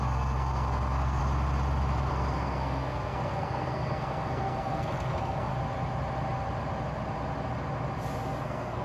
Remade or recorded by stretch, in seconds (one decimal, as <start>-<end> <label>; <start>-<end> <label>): 0.0-1.2 remade; 1.2-2.1 recorded; 2.1-5.5 remade; 5.5-8.4 recorded; 8.4-8.8 remade